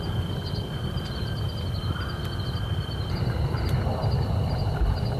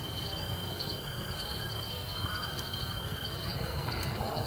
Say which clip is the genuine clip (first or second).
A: first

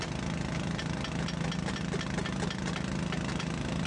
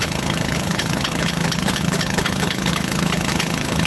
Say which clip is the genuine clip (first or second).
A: first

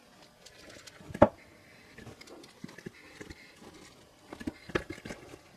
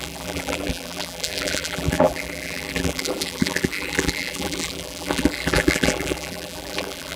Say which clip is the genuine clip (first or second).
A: first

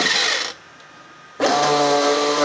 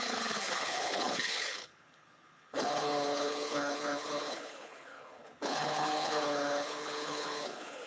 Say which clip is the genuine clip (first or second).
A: first